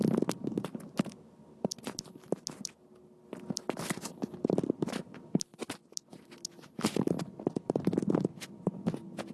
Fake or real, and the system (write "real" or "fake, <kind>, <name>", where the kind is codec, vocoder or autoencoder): real